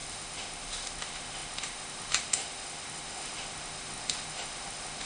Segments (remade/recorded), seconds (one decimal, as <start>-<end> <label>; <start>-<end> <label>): 0.0-5.1 remade